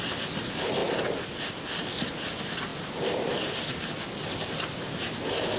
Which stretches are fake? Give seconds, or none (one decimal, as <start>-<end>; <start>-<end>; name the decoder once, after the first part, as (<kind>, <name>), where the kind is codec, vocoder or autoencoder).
none